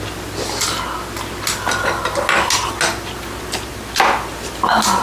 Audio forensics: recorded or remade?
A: recorded